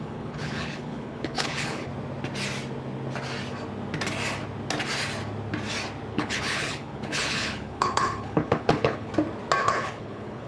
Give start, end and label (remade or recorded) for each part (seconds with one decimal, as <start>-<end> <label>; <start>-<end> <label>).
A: 0.0-1.9 remade; 1.9-6.1 recorded; 6.1-9.1 remade; 9.1-9.6 recorded; 9.6-10.5 remade